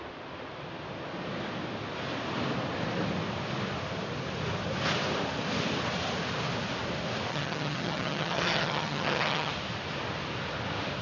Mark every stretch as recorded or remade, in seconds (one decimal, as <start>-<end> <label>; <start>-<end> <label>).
0.0-7.3 recorded; 7.3-9.5 remade; 9.5-11.0 recorded